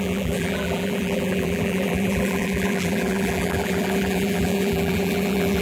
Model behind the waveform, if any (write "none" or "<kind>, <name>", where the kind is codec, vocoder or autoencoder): vocoder, BigVGAN v2